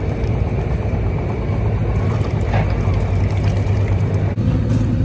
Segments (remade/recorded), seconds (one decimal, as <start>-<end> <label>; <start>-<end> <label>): 0.0-5.0 recorded